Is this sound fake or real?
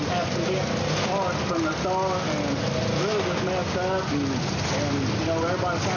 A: real